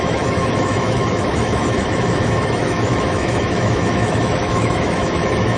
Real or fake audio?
fake